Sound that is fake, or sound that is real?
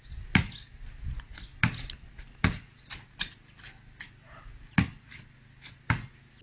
real